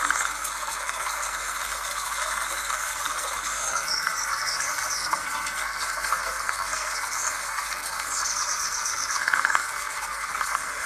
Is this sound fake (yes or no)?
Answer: yes